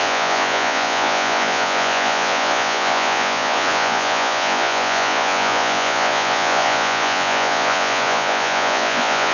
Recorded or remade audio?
remade